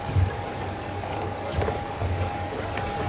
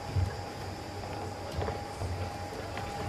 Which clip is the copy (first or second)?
first